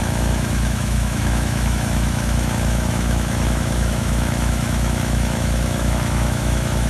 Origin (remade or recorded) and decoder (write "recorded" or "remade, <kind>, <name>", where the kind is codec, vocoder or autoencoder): remade, autoencoder, DAC-VAE